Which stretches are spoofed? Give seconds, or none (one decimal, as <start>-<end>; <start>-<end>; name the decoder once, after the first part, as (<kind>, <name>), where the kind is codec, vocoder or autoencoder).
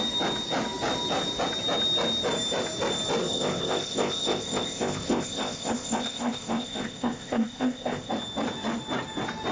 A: 3.2-8.1 (codec, ZipCodec)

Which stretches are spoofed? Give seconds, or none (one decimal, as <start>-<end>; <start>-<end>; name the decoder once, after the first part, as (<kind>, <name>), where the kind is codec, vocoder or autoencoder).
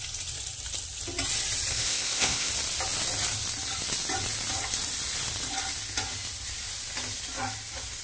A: 1.7-2.5 (codec, ZipCodec)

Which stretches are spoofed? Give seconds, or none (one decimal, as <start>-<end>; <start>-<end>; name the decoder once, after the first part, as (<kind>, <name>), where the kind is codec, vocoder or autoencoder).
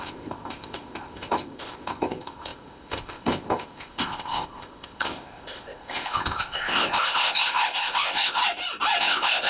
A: 0.0-8.4 (codec, ZipCodec); 9.0-9.5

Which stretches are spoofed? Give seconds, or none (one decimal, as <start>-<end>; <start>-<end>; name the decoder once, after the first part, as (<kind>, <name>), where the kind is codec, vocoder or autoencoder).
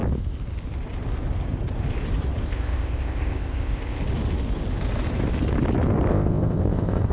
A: 2.5-4.0 (codec, ZipCodec); 6.1-7.1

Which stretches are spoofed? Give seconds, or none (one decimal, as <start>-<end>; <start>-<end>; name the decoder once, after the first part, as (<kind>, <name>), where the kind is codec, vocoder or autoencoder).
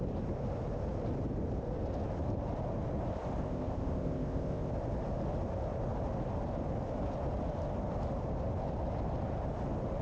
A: 3.4-4.7 (codec, ZipCodec)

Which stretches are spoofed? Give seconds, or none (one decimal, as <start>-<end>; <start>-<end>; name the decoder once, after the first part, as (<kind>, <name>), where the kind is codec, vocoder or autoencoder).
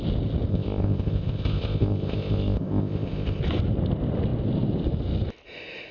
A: 0.5-3.4 (codec, ZipCodec)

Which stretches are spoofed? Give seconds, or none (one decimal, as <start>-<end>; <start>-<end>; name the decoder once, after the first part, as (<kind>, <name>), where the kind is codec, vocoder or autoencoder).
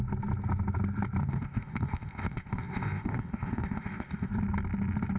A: 1.2-4.3 (codec, ZipCodec)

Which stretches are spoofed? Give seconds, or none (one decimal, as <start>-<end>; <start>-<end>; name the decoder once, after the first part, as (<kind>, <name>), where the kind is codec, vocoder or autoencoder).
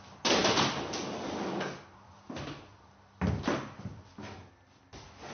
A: none